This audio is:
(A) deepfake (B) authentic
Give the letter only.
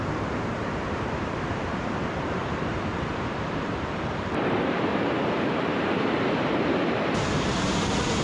A